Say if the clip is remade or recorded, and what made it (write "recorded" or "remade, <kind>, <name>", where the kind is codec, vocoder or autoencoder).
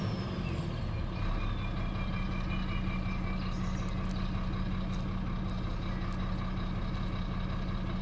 recorded